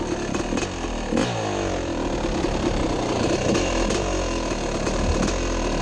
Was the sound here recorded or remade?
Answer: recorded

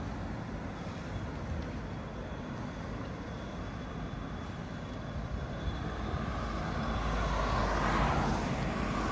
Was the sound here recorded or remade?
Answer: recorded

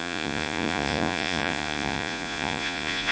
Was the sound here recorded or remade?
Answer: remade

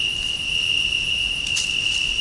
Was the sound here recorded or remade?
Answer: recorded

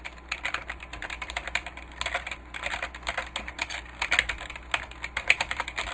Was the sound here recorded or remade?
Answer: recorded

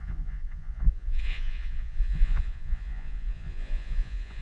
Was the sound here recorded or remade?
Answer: remade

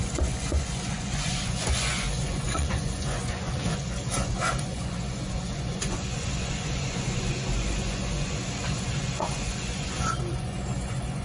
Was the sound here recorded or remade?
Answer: remade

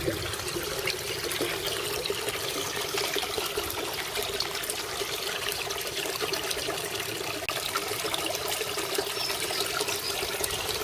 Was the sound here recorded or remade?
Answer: recorded